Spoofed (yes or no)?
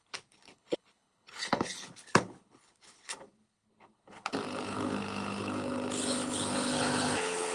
yes